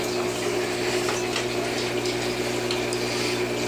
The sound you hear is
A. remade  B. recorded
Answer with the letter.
B